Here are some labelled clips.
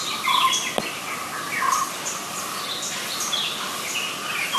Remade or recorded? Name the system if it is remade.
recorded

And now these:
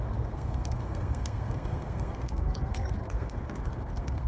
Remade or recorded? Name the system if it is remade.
remade, codec, SNAC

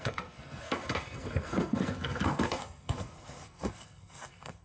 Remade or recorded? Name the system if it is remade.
remade, codec, SNAC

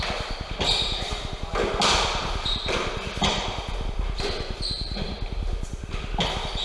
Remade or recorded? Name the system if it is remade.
recorded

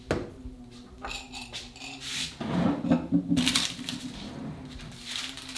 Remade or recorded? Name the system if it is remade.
recorded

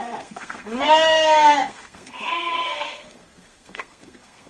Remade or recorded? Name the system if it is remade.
remade, codec, SNAC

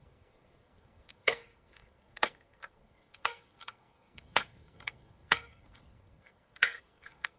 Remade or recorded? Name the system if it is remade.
remade, codec, SNAC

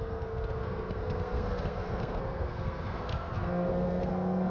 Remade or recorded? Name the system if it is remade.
remade, codec, SNAC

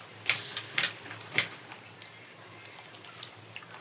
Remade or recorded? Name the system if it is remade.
recorded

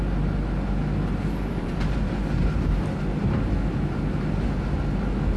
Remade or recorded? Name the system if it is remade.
recorded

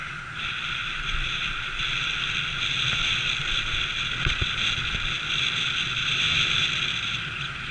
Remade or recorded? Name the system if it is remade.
recorded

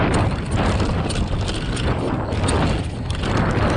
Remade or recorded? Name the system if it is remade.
recorded